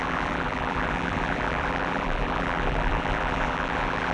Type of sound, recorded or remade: remade